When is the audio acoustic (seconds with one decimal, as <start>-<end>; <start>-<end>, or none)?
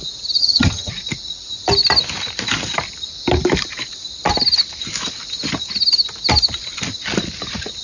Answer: 0.0-0.4; 0.9-7.8